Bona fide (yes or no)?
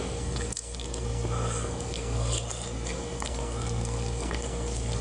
no